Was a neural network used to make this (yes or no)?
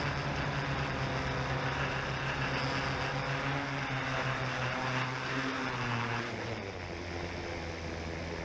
no